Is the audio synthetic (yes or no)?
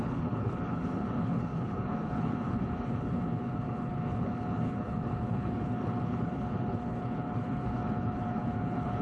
yes